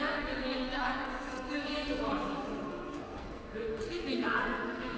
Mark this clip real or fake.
fake